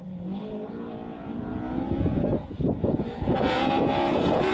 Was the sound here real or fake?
fake